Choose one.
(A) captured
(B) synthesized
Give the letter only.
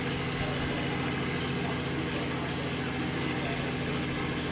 A